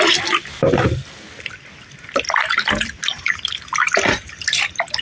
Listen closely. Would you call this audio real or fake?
real